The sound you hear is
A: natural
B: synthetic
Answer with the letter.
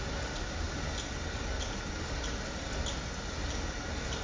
A